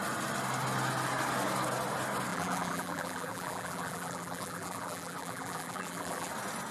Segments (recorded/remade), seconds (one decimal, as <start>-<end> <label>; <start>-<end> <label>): 0.0-2.3 recorded; 2.3-6.3 remade; 6.3-6.7 recorded